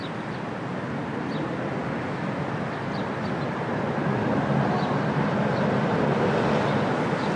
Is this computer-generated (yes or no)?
no